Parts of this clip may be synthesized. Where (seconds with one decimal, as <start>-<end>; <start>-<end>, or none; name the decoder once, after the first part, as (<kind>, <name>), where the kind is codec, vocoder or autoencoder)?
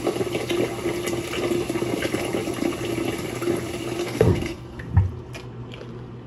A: 4.0-4.8 (codec, SNAC)